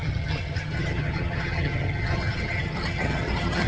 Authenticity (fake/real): fake